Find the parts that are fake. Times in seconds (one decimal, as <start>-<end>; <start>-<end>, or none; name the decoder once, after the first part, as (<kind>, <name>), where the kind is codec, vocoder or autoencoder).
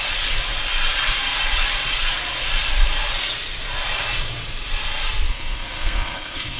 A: 5.3-6.6 (codec, SNAC)